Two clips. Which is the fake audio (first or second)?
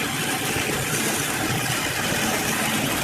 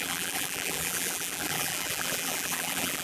second